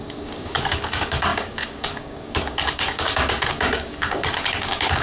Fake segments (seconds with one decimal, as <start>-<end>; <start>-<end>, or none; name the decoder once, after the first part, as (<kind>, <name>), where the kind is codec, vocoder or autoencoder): 0.0-5.0 (codec, DAC)